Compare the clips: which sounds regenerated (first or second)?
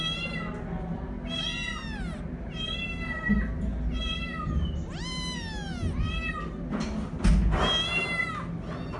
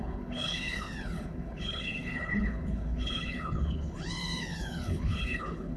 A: second